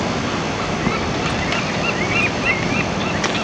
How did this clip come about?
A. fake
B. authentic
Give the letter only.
B